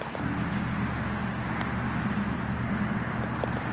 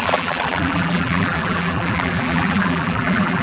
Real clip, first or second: first